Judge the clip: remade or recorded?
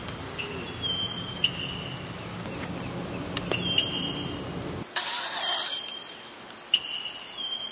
recorded